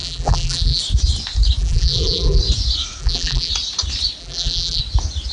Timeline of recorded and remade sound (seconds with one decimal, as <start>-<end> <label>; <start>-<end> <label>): 0.0-0.8 remade; 0.8-1.6 recorded; 1.6-2.4 remade; 2.4-3.0 recorded; 3.0-3.5 remade; 3.5-4.2 recorded; 4.2-4.8 remade; 4.8-5.3 recorded